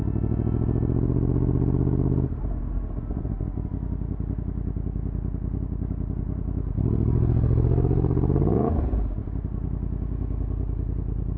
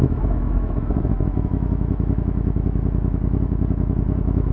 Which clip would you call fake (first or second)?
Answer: second